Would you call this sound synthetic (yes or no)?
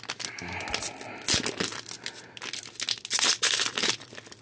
no